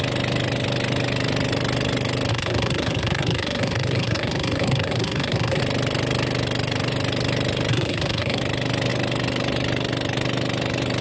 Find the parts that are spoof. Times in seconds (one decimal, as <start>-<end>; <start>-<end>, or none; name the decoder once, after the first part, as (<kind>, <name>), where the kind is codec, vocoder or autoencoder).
2.3-5.6 (codec, SNAC); 7.7-8.4